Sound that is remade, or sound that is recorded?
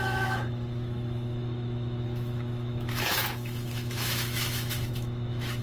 remade